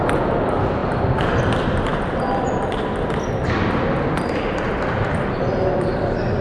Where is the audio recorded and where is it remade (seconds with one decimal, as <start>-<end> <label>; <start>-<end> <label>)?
0.0-6.4 recorded